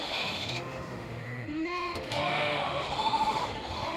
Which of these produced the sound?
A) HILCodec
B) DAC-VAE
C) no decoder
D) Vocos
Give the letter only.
B